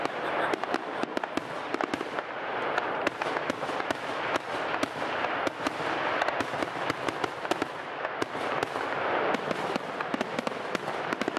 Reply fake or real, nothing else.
real